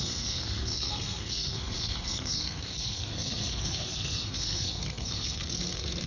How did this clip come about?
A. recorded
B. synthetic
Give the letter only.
B